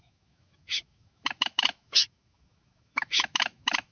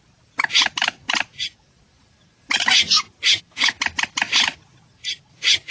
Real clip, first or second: second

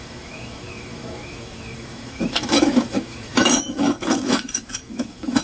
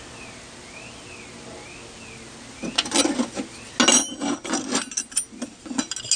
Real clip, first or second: second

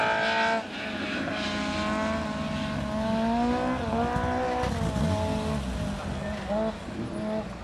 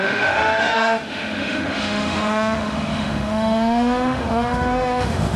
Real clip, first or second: first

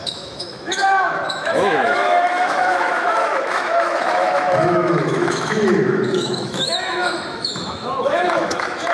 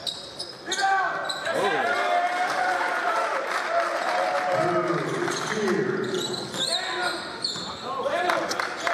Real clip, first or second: second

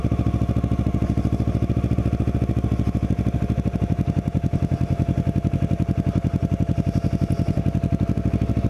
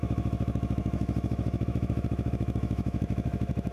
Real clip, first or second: first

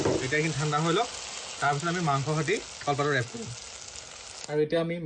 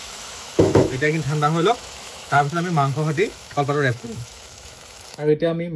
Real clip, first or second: first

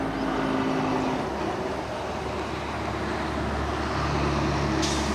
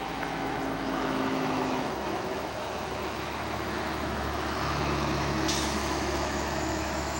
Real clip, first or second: first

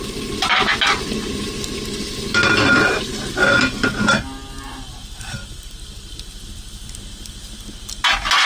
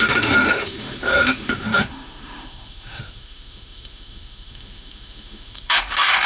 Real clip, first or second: first